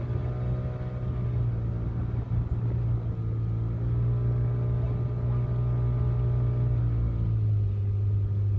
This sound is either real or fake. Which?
real